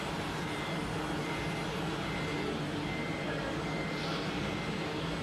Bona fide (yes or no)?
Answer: yes